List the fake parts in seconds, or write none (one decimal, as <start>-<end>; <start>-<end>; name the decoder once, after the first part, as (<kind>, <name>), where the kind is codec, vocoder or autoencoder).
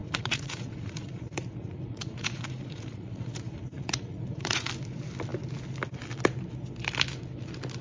0.0-4.7 (vocoder, Vocos)